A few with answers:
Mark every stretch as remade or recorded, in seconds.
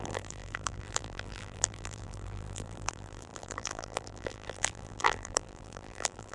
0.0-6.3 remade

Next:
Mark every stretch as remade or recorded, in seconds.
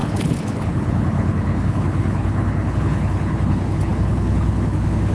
0.0-5.1 remade